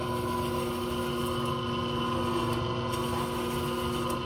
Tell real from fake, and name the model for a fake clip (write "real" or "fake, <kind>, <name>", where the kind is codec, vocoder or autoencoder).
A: real